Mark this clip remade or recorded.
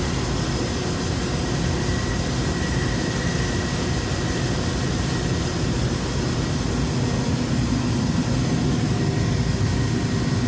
recorded